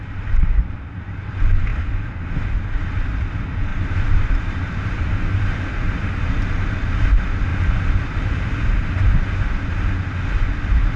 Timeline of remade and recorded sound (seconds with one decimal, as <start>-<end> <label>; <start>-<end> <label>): 0.0-3.7 recorded; 3.7-6.7 remade; 6.7-11.0 recorded

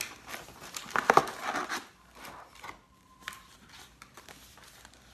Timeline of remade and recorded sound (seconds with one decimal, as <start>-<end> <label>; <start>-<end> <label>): 0.0-5.1 recorded

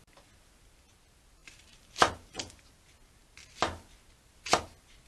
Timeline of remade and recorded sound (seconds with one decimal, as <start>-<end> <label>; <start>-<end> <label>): 0.0-1.4 recorded; 1.4-2.6 remade; 2.6-5.1 recorded

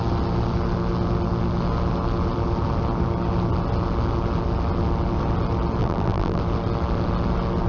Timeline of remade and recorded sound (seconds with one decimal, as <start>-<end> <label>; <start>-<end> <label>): 0.0-5.8 recorded; 5.8-6.4 remade; 6.4-7.7 recorded